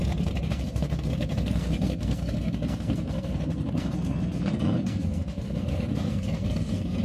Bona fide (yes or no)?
no